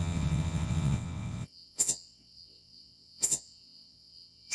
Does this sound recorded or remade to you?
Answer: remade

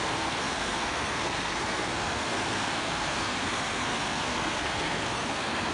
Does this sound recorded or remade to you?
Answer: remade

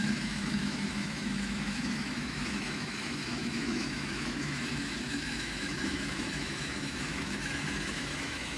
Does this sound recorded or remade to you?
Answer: remade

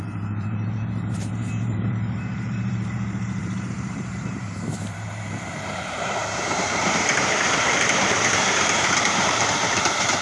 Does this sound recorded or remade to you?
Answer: remade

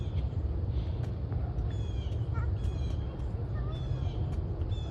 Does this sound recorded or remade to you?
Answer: recorded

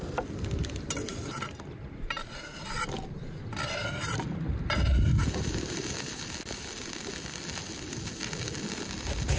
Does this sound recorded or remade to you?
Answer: recorded